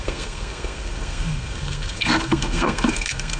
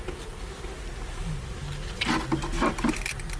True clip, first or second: second